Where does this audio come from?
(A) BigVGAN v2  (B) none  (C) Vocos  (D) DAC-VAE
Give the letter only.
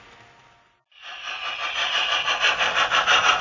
B